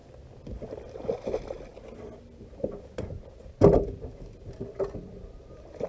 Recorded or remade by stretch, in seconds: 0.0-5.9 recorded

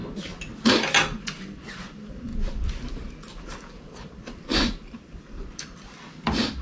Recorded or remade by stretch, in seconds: 0.0-1.2 recorded; 1.2-6.6 remade